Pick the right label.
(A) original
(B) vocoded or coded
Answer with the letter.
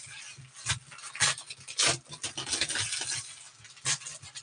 A